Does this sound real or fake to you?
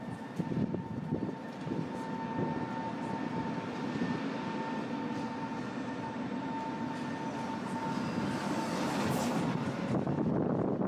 real